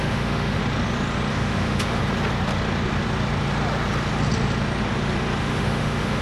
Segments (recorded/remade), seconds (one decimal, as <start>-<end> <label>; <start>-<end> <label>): 0.0-0.6 remade; 0.6-1.3 recorded; 1.3-2.0 remade; 2.0-5.4 recorded; 5.4-6.2 remade